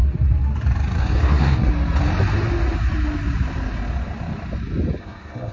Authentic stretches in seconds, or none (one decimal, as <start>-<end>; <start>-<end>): 0.0-1.0; 1.7-5.0